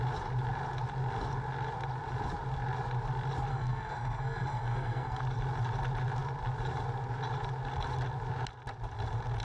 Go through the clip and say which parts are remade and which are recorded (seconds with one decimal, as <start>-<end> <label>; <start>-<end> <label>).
0.0-3.5 recorded; 3.5-5.2 remade; 5.2-9.4 recorded